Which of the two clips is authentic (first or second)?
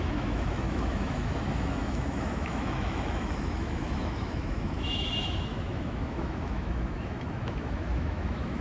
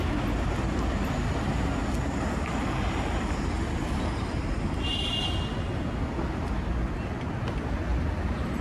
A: second